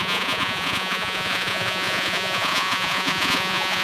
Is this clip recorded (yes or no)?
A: no